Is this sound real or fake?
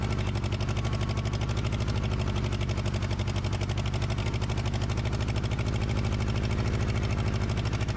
real